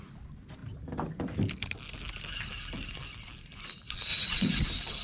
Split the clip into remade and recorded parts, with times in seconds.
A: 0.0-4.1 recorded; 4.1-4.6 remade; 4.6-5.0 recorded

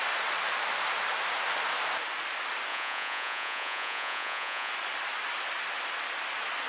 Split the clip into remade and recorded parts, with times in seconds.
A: 0.0-2.7 recorded; 2.7-4.7 remade; 4.7-6.7 recorded

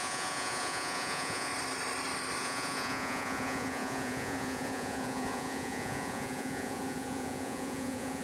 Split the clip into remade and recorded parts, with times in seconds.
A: 0.0-1.5 remade; 1.5-2.4 recorded; 2.4-8.2 remade

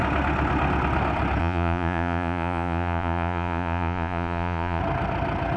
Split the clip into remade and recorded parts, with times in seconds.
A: 0.0-1.4 recorded; 1.4-4.8 remade; 4.8-5.6 recorded

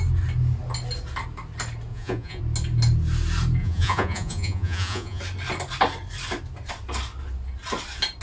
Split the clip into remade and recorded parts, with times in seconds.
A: 0.0-1.9 recorded; 1.9-2.4 remade; 2.4-3.6 recorded; 3.6-5.2 remade; 5.2-8.2 recorded

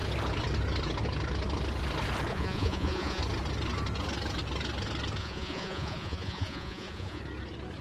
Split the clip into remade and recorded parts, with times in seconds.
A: 0.0-2.3 recorded; 2.3-3.2 remade; 3.2-5.2 recorded; 5.2-7.2 remade; 7.2-7.8 recorded